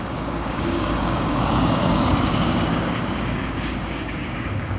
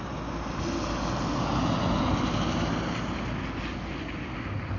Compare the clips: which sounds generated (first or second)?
first